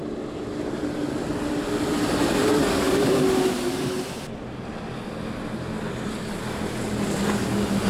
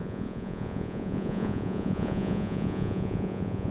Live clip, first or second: first